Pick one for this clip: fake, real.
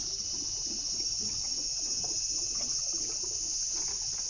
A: real